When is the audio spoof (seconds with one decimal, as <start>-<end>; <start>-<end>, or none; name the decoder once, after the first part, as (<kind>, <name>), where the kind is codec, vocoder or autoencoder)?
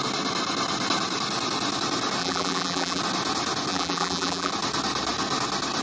2.2-3.0 (vocoder, BigVGAN v2); 3.7-4.5